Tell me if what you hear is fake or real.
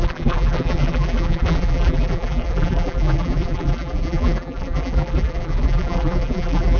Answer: fake